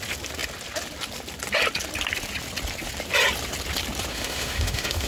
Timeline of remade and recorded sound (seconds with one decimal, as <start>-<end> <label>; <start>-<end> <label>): 0.0-4.1 recorded; 4.1-5.1 remade